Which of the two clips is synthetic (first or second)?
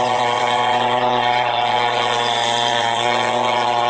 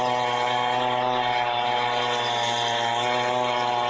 first